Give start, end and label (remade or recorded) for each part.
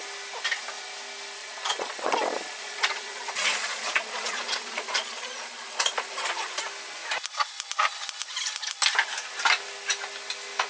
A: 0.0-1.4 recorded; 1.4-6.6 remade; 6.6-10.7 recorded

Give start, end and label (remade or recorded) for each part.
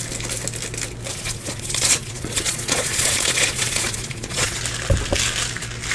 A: 0.0-1.1 recorded; 1.1-4.6 remade; 4.6-5.9 recorded